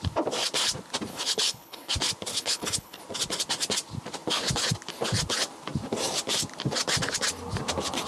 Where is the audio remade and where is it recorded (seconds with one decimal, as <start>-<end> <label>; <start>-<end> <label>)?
0.0-1.1 recorded; 1.1-1.9 remade; 1.9-2.3 recorded; 2.3-3.0 remade; 3.0-8.1 recorded